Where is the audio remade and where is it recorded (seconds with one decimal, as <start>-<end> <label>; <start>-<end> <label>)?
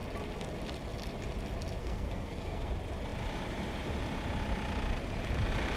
0.0-1.8 recorded; 1.8-2.7 remade; 2.7-5.8 recorded